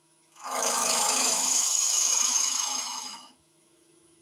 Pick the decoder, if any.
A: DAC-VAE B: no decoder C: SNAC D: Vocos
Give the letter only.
A